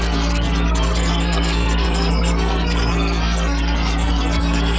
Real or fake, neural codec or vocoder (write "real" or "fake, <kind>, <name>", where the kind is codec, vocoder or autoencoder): fake, codec, SNAC